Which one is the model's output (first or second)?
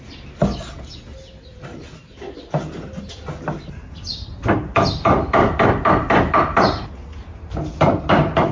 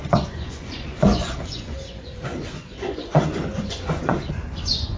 second